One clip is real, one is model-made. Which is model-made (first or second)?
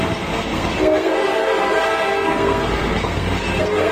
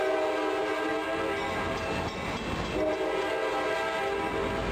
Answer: first